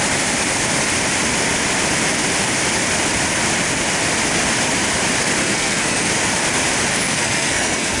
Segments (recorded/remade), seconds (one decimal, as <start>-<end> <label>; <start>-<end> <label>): 0.0-5.4 recorded; 5.4-6.1 remade; 6.1-6.9 recorded; 6.9-8.0 remade